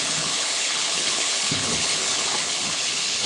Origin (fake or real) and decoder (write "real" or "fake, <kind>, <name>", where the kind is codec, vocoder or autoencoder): fake, codec, HILCodec